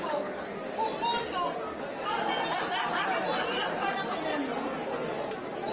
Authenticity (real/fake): real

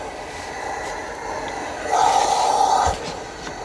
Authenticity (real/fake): real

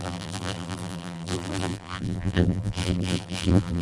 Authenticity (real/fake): fake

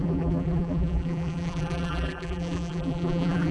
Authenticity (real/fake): fake